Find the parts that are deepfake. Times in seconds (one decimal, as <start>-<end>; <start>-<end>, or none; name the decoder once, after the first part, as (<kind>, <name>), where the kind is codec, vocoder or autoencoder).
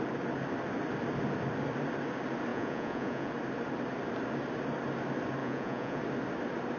2.5-3.3 (vocoder, Vocos); 5.4-6.0